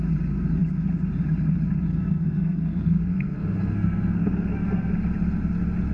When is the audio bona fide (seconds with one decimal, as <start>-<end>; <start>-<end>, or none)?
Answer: 0.0-1.9; 4.9-5.9